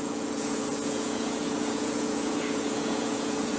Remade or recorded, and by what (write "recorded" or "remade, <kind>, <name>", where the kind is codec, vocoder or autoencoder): remade, vocoder, Vocos